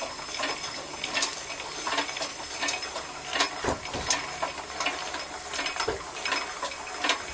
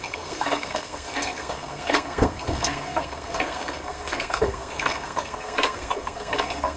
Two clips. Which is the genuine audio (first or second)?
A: first